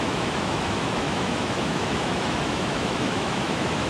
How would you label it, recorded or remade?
remade